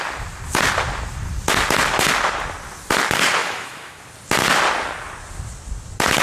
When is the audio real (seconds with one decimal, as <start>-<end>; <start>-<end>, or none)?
0.0-3.4; 4.0-6.2